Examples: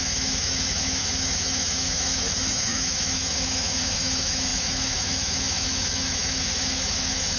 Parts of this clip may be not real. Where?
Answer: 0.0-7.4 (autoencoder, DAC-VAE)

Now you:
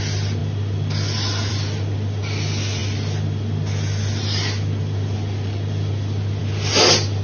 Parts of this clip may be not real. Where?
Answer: none

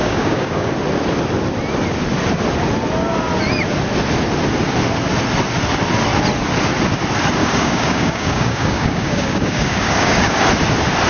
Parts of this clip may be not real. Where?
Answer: 0.0-0.7 (codec, DAC); 7.4-10.4

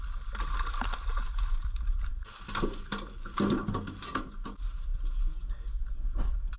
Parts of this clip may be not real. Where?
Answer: none

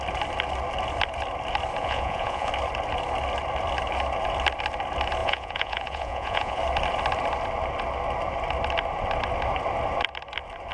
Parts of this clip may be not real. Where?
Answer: 1.8-2.5 (vocoder, Vocos); 5.2-6.6